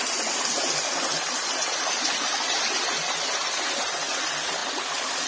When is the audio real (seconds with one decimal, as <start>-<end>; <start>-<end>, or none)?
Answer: 0.0-5.3